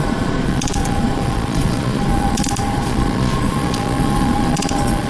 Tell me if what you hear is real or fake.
fake